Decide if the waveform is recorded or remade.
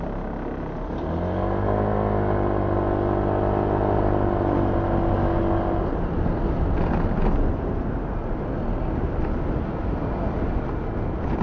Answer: recorded